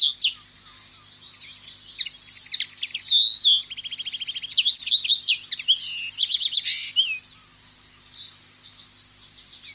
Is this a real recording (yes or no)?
yes